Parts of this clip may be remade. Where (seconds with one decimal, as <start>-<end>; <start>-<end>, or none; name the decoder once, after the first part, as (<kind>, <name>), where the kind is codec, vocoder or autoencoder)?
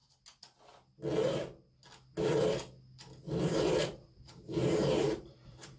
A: 3.5-5.8 (vocoder, BigVGAN v2)